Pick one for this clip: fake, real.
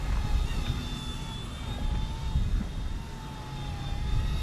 real